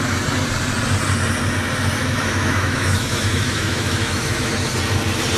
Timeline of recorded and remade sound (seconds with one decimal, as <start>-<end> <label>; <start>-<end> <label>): 0.0-2.0 recorded; 2.0-4.5 remade; 4.5-5.4 recorded